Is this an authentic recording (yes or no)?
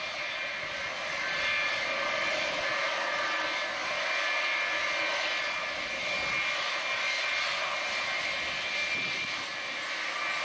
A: yes